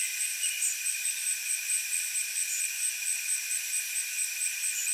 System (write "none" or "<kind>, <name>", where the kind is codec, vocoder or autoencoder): vocoder, BigVGAN v2